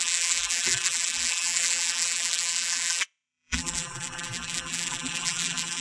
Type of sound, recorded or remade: remade